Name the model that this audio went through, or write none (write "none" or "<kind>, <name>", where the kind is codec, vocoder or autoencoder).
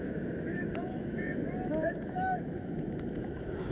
autoencoder, DAC-VAE